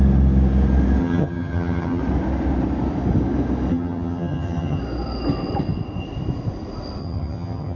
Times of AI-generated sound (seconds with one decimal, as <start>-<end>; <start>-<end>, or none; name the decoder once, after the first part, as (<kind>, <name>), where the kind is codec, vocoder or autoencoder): 1.0-2.0 (vocoder, HiFi-GAN); 3.7-4.8; 7.0-7.8